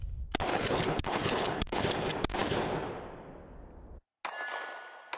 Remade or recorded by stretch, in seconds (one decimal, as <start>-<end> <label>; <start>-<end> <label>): 0.0-0.5 recorded; 0.5-1.8 remade; 1.8-5.2 recorded

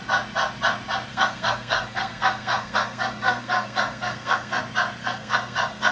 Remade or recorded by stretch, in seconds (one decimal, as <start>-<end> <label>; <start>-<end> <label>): 0.0-1.1 recorded; 1.1-4.6 remade; 4.6-5.0 recorded; 5.0-5.9 remade

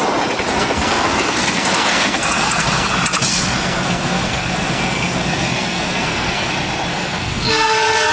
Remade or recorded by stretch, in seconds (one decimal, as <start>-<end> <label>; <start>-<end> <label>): 0.0-0.5 recorded; 0.5-2.9 remade; 2.9-3.3 recorded; 3.3-6.5 remade; 6.5-6.9 recorded; 6.9-8.1 remade

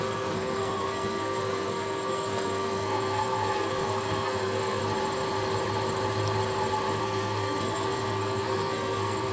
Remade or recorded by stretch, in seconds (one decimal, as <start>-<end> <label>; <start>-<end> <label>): 0.0-4.8 remade; 4.8-7.0 recorded; 7.0-9.3 remade